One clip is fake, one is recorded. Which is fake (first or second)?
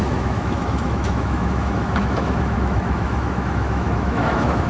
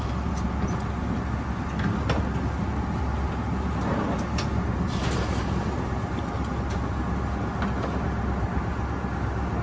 first